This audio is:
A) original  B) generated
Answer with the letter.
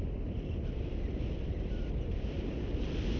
A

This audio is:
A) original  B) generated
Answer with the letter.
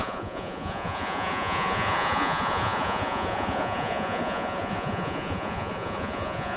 B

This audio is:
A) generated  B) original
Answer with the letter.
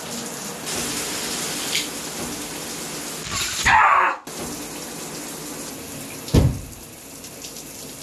B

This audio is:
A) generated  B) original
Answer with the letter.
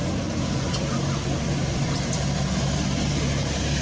B